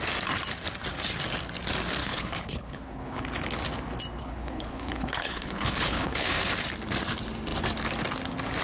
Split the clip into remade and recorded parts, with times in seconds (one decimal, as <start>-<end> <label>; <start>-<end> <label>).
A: 0.0-2.0 recorded; 2.0-3.2 remade; 3.2-4.2 recorded; 4.2-6.5 remade; 6.5-8.6 recorded